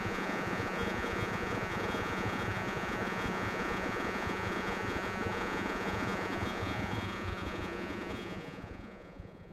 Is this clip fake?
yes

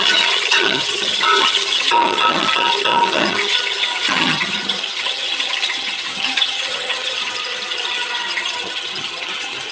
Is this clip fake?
yes